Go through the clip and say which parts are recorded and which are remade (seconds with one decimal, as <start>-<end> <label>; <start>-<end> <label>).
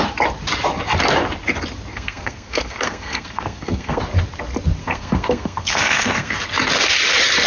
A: 0.0-1.9 recorded; 1.9-4.0 remade; 4.0-4.8 recorded; 4.8-6.4 remade; 6.4-7.5 recorded